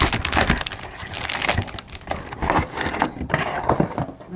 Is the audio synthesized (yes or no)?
no